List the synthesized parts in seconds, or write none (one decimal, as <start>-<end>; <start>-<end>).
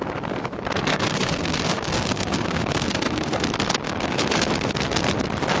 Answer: 0.9-3.4; 3.8-4.4